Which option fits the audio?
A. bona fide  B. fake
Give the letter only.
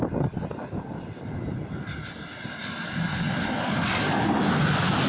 A